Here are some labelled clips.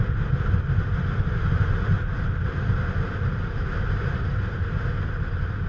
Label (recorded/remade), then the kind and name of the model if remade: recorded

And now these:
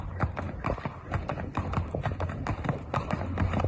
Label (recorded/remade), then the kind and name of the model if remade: recorded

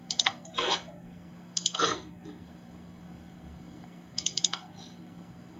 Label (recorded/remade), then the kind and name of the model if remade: remade, codec, SNAC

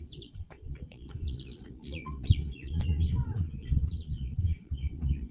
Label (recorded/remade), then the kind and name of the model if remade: remade, vocoder, Vocos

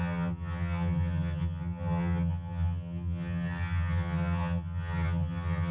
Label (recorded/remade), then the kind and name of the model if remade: remade, vocoder, HiFi-GAN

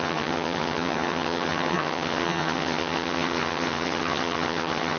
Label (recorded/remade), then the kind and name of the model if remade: remade, vocoder, HiFi-GAN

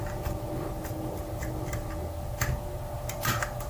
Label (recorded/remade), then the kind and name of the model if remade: recorded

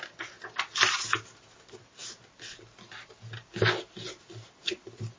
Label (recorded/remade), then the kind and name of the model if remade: recorded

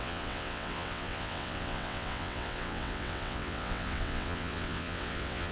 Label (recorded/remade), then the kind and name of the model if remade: remade, vocoder, WaveNeXt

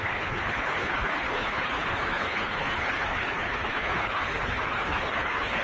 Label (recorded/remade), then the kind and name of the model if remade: remade, codec, HILCodec